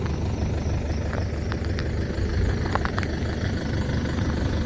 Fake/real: real